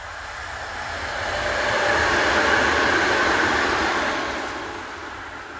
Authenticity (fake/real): real